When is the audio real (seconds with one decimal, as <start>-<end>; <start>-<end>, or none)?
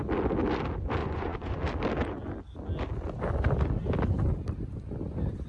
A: 0.0-1.0; 1.6-5.5